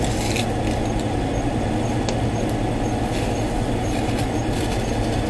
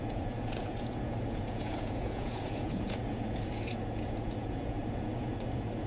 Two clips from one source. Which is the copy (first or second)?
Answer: second